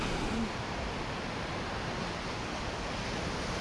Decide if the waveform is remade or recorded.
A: recorded